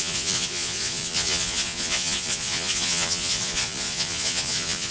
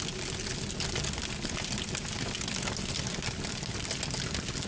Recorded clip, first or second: second